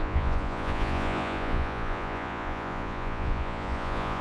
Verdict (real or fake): fake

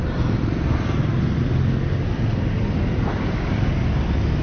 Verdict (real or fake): real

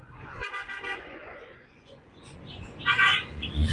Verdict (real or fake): fake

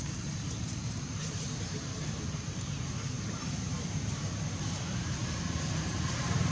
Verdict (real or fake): fake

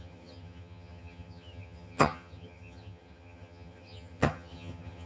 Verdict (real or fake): fake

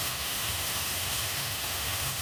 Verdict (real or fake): fake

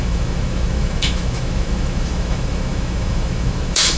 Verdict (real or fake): fake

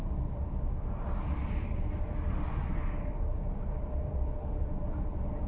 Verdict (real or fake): real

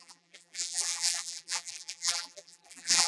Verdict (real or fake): fake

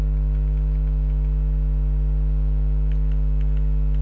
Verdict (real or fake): real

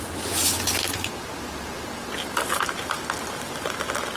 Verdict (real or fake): real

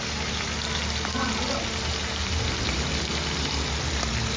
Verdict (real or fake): real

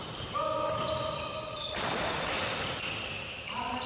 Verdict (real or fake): real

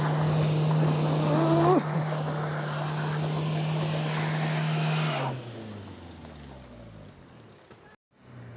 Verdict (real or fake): real